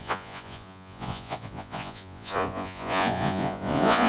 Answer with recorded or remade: remade